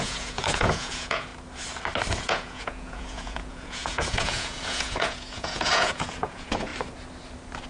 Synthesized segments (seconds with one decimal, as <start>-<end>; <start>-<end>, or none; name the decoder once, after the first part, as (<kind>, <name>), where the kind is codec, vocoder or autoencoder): 0.0-1.3 (vocoder, Vocos); 2.2-6.7